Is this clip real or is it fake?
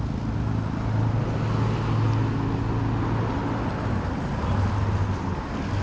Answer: real